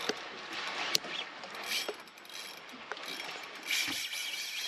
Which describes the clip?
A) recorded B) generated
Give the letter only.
A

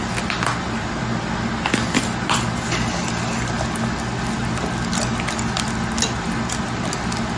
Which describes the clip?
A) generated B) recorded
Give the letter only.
B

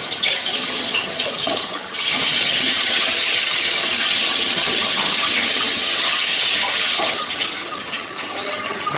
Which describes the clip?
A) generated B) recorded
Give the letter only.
A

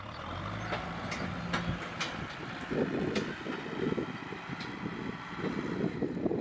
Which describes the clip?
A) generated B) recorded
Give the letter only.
B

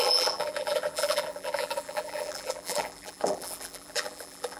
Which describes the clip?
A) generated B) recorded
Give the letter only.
A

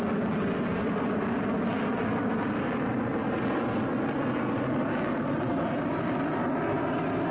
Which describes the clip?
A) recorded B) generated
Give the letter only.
A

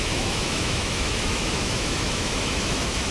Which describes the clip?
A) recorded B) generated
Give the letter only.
B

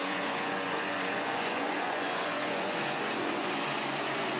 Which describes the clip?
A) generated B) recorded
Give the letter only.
A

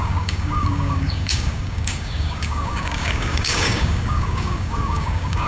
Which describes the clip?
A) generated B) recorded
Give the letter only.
A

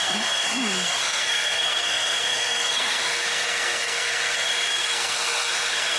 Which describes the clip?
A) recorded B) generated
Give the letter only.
B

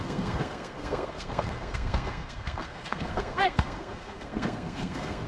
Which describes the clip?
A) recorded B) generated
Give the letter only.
B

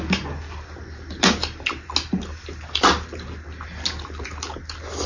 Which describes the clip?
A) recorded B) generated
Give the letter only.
A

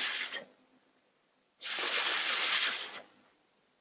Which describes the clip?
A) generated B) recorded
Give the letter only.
B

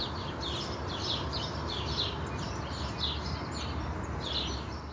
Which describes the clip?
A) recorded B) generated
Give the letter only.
A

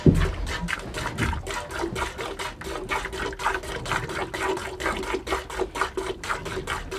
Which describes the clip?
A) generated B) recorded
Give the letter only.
B